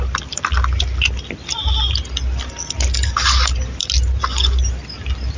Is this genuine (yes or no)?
yes